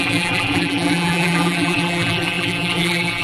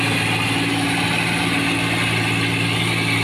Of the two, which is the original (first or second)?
second